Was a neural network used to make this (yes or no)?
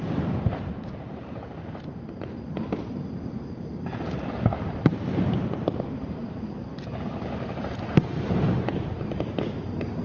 yes